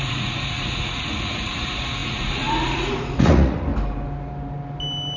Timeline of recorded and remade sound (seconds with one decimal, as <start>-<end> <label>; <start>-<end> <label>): 0.0-3.7 remade; 3.7-5.2 recorded